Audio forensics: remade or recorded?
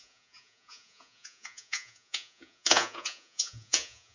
remade